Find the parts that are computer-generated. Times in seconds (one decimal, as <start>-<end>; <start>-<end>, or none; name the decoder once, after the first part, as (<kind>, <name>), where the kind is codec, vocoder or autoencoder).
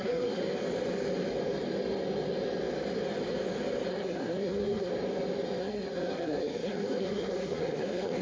0.0-0.4 (codec, SNAC); 3.9-4.9; 5.6-8.2